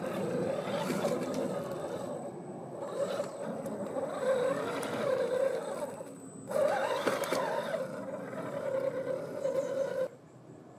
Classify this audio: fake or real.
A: real